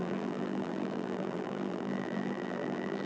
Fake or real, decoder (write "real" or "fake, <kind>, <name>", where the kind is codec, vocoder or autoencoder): fake, vocoder, BigVGAN v2